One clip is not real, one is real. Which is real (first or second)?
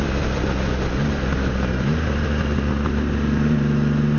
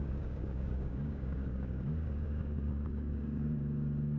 first